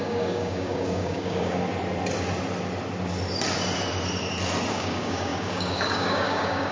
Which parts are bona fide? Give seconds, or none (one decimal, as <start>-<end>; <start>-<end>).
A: 1.6-4.7